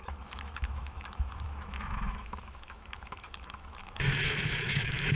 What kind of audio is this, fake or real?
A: fake